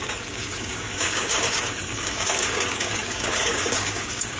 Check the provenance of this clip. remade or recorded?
remade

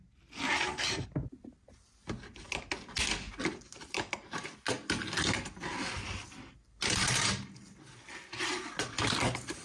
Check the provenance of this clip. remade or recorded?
recorded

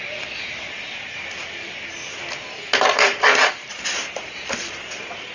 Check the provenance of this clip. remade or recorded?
recorded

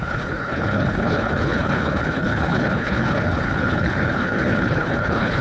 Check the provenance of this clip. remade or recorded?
remade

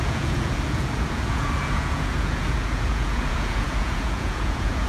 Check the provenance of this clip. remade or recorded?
remade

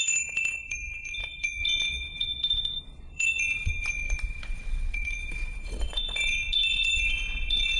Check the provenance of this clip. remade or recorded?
remade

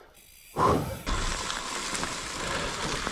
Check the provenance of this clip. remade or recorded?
recorded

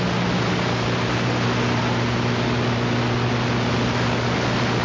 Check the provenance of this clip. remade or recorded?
recorded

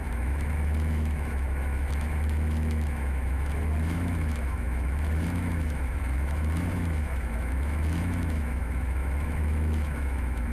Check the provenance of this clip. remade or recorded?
remade